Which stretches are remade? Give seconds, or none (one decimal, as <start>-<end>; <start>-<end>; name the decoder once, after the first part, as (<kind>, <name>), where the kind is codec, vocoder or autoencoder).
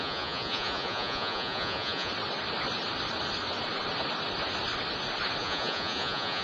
0.0-2.1 (vocoder, Vocos); 5.4-6.4